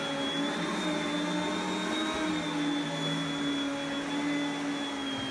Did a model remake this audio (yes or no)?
no